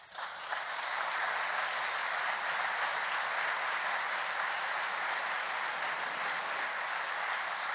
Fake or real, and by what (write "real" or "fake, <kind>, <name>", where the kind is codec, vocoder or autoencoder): real